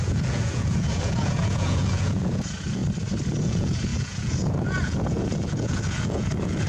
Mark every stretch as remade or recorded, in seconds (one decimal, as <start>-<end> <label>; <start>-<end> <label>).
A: 0.0-2.8 remade; 2.8-3.4 recorded; 3.4-6.7 remade